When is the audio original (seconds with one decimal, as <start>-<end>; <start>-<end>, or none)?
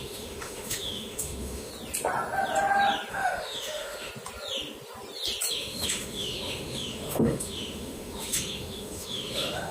1.7-3.1; 4.1-5.5